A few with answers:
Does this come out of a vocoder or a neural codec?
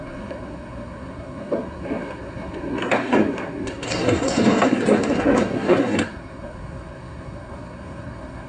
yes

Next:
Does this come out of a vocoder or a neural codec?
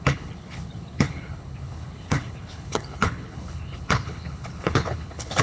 yes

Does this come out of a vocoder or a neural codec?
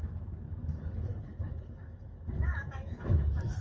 yes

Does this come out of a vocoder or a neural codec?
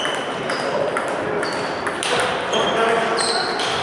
no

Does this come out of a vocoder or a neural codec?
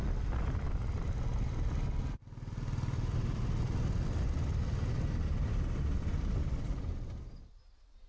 no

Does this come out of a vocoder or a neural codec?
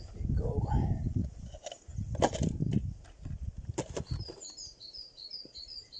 no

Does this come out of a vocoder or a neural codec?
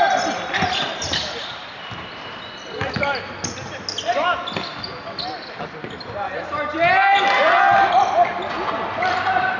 no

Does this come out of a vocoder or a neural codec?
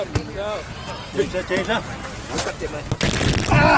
no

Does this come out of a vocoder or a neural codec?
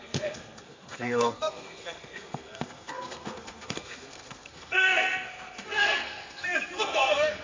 yes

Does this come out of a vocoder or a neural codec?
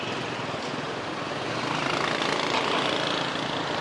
no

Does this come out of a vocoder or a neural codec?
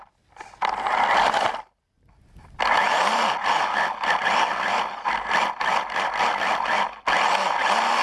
no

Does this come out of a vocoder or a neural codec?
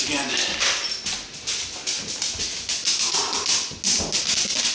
no